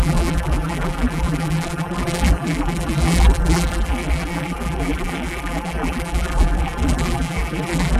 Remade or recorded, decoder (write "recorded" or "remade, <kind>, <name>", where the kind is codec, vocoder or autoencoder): remade, vocoder, BigVGAN v2